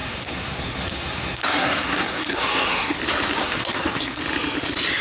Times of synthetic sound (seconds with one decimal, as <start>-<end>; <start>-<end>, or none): 0.0-3.0; 3.4-4.2